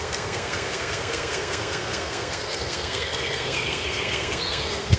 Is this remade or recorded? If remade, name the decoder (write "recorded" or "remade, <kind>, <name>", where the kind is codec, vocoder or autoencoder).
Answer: remade, codec, SNAC